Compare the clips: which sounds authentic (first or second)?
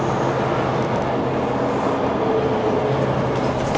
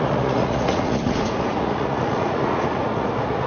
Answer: first